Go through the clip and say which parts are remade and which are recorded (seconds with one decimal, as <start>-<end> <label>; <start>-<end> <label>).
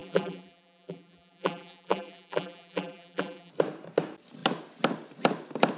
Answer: 0.0-3.5 remade; 3.5-5.8 recorded